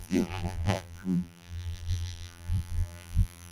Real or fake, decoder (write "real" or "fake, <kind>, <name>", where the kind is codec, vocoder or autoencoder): fake, vocoder, BigVGAN v2